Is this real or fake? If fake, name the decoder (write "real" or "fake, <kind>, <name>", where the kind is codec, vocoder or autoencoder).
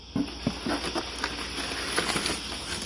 real